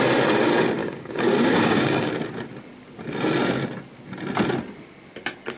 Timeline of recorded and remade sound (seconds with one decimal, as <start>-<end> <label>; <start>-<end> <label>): 0.0-0.8 recorded; 0.8-2.1 remade; 2.1-5.6 recorded